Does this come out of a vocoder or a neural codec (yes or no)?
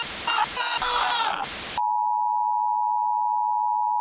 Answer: no